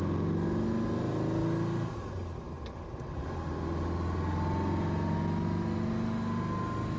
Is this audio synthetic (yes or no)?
no